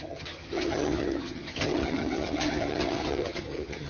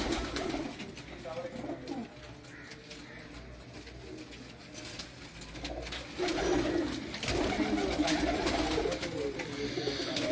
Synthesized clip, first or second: first